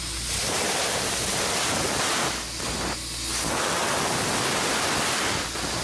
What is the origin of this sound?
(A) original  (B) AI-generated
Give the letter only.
A